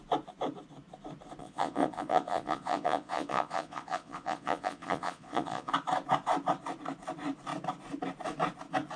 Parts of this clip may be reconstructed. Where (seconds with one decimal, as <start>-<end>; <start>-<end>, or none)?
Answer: 1.4-5.7